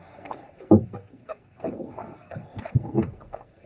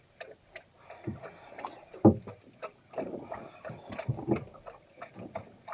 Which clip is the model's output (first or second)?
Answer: first